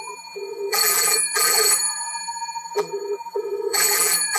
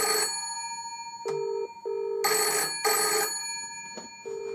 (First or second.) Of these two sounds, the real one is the second